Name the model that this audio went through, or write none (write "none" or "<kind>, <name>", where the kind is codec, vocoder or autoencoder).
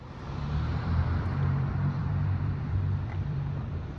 vocoder, BigVGAN v2